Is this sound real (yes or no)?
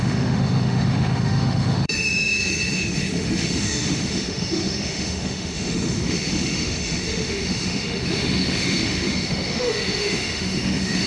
no